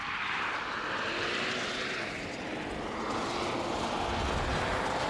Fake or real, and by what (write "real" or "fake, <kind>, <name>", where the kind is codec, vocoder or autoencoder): real